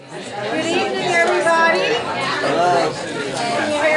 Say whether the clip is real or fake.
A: real